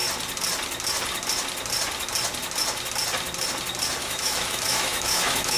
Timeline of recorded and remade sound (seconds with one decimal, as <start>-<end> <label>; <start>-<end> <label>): 0.0-4.0 recorded; 4.0-5.6 remade